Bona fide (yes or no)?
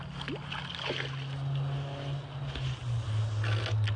yes